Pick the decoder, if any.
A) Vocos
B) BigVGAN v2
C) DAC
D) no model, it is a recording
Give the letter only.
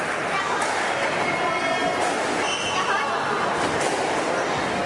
D